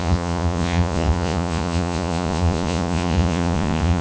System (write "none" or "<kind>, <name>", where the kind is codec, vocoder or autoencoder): vocoder, Vocos